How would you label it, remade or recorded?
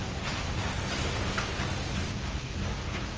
recorded